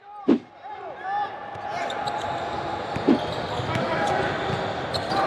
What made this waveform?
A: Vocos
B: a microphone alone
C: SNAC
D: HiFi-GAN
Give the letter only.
B